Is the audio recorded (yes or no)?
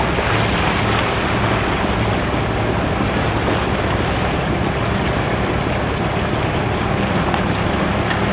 yes